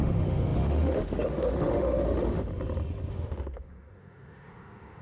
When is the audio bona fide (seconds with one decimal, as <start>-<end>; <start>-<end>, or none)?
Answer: 2.5-3.1